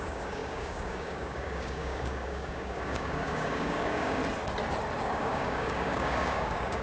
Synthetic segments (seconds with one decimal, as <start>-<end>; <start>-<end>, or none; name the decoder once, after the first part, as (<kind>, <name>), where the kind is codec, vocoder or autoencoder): 0.0-4.2 (codec, DAC); 5.0-6.8